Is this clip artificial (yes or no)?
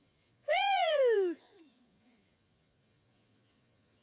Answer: yes